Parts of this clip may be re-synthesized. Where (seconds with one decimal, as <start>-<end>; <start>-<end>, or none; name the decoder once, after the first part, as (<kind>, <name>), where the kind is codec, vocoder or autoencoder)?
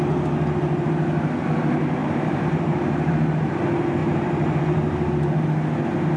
2.0-3.1 (vocoder, BigVGAN v2); 4.0-4.6